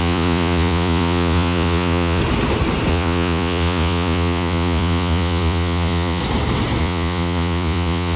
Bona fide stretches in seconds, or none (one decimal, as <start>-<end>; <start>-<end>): 2.2-2.9; 6.2-6.8